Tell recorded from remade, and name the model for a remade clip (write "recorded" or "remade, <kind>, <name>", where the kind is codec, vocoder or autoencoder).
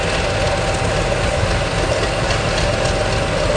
recorded